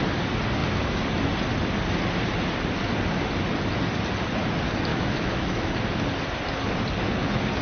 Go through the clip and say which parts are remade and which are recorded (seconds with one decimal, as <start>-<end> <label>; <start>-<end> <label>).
0.0-4.9 recorded; 4.9-5.7 remade; 5.7-7.6 recorded

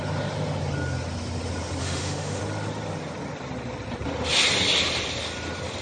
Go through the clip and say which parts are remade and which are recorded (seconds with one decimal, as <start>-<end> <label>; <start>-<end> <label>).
0.0-1.8 recorded; 1.8-2.4 remade; 2.4-5.8 recorded

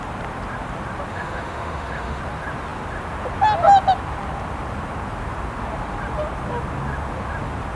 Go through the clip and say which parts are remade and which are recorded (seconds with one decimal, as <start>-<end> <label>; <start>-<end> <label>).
0.0-1.1 recorded; 1.1-2.2 remade; 2.2-7.8 recorded

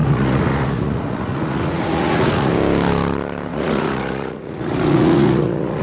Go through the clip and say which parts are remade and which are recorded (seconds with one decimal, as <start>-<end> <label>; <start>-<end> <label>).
0.0-2.5 remade; 2.5-3.5 recorded; 3.5-5.8 remade

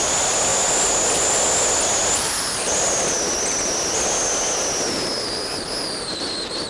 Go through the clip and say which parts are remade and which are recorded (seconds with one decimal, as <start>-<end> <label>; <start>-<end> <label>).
0.0-6.7 recorded

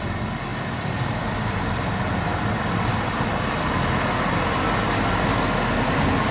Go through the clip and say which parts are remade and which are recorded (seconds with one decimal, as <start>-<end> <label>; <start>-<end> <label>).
0.0-0.5 recorded; 0.5-2.7 remade; 2.7-6.3 recorded